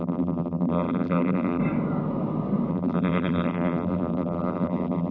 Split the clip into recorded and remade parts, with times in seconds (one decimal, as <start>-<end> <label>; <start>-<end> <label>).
0.0-1.6 remade; 1.6-2.7 recorded; 2.7-5.1 remade